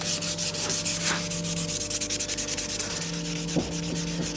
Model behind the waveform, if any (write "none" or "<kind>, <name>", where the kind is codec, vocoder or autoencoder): none